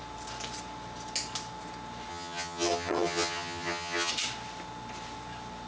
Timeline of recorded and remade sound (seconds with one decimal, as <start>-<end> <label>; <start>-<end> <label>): 0.0-2.1 recorded; 2.1-4.1 remade; 4.1-5.7 recorded